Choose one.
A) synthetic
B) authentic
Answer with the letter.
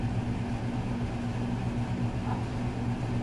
B